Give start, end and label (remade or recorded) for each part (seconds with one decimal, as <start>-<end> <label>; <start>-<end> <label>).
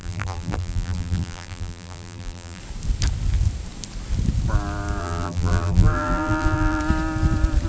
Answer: 0.0-2.6 remade; 2.6-5.0 recorded; 5.0-6.8 remade; 6.8-7.7 recorded